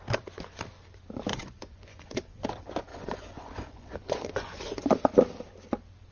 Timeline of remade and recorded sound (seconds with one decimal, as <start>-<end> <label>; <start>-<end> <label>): 0.0-1.3 recorded; 1.3-2.4 remade; 2.4-2.9 recorded; 2.9-4.9 remade; 4.9-6.1 recorded